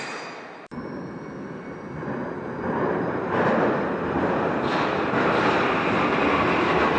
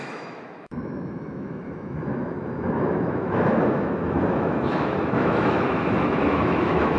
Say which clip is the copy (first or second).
second